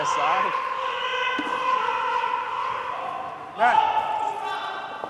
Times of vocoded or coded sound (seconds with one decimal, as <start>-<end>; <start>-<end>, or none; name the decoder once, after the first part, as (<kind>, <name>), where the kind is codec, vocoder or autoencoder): none